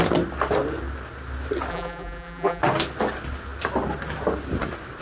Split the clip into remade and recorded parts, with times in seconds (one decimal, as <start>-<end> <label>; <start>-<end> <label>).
0.0-1.7 recorded; 1.7-2.6 remade; 2.6-5.0 recorded